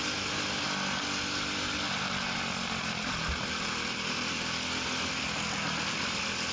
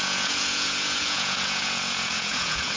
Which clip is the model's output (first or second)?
second